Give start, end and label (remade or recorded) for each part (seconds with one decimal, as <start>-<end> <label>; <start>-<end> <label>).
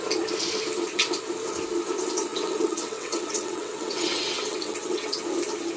0.0-2.3 recorded; 2.3-5.2 remade; 5.2-5.8 recorded